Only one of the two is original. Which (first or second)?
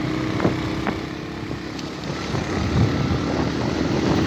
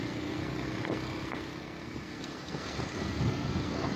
first